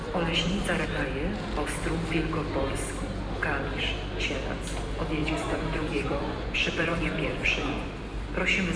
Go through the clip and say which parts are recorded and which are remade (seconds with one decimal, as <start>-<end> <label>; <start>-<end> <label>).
0.0-5.2 recorded; 5.2-7.9 remade; 7.9-8.8 recorded